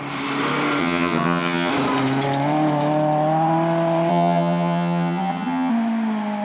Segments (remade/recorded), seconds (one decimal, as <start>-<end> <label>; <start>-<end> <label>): 0.0-0.8 recorded; 0.8-1.7 remade; 1.7-4.1 recorded; 4.1-5.7 remade; 5.7-6.4 recorded